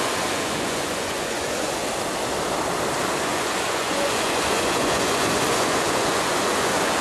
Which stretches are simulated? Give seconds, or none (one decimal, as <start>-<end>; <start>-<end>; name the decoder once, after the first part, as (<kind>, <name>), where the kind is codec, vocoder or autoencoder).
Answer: 0.0-1.8 (vocoder, Vocos); 3.2-7.0